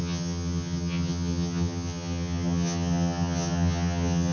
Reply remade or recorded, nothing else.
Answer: remade